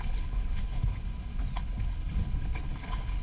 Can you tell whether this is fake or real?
fake